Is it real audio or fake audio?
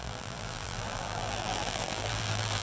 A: fake